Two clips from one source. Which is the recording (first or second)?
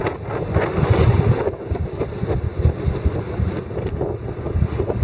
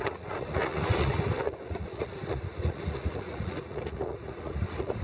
first